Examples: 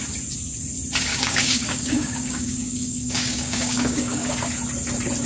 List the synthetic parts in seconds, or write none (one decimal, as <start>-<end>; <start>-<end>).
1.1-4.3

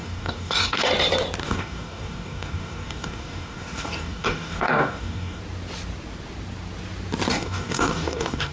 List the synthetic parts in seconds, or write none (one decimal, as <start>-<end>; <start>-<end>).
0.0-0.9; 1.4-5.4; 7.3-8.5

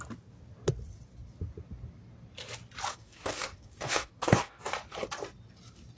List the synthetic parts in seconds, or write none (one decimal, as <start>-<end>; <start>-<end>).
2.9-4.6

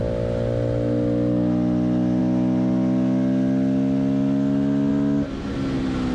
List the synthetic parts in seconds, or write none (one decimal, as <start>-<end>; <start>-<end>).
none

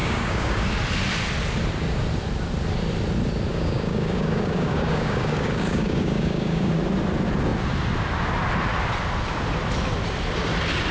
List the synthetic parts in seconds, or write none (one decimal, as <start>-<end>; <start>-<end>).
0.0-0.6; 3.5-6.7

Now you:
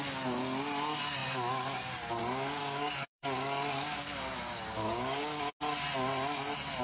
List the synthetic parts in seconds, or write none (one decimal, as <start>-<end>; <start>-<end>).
2.6-4.3; 4.8-5.4

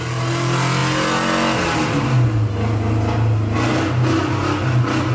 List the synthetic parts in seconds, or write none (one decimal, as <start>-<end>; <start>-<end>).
none